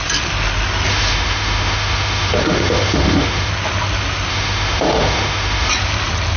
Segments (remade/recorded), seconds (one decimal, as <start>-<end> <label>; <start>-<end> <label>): 0.0-0.9 recorded; 0.9-3.5 remade; 3.5-4.3 recorded; 4.3-5.7 remade; 5.7-6.4 recorded